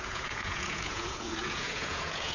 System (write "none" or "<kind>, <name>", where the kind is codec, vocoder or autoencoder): vocoder, Vocos